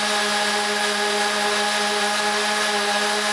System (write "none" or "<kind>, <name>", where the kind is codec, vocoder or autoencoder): none